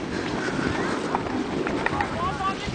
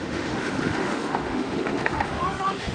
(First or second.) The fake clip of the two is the second